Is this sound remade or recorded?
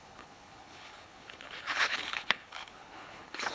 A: remade